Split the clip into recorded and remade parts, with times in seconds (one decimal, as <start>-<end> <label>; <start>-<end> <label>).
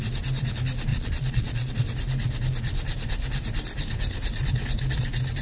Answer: 0.0-0.9 recorded; 0.9-1.7 remade; 1.7-5.4 recorded